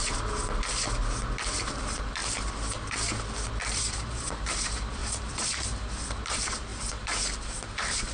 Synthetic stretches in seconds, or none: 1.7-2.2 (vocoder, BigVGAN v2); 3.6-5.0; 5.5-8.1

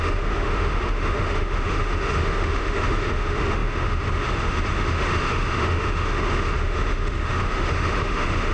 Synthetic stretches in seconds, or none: 0.0-8.5 (autoencoder, DAC-VAE)

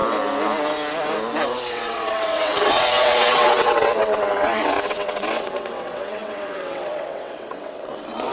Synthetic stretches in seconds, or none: 1.7-8.3 (vocoder, WaveNeXt)